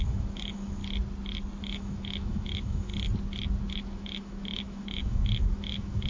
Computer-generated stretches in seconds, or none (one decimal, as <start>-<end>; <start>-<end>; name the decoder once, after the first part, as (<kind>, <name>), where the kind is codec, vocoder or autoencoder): 0.0-0.8 (autoencoder, DAC-VAE); 1.6-2.9; 3.7-6.1